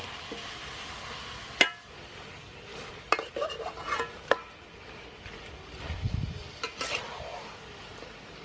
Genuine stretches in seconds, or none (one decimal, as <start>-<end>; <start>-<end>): 0.0-8.4